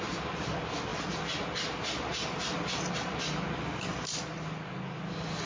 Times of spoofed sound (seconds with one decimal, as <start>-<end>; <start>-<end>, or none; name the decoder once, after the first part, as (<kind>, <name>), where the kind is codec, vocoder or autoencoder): none